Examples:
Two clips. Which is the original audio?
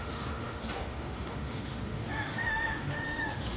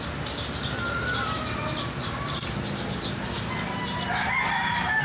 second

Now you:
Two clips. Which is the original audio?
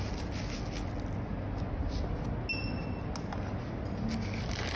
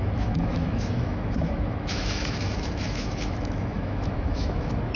first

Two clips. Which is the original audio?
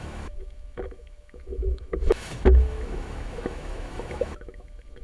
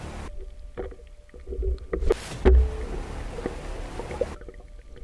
second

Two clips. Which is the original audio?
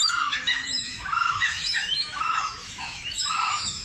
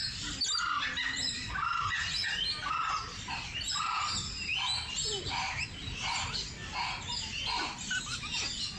second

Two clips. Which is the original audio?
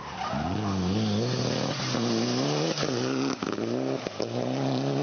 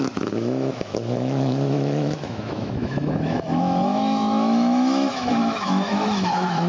first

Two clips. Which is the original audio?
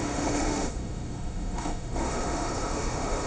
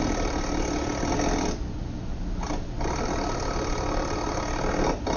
second